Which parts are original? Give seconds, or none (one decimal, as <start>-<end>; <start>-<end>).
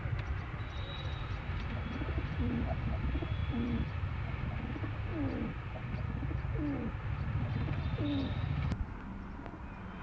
2.6-3.4; 4.6-10.0